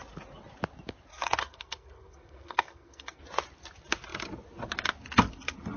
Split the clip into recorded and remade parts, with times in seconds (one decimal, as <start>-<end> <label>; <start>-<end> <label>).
0.0-1.1 recorded; 1.1-3.2 remade; 3.2-5.8 recorded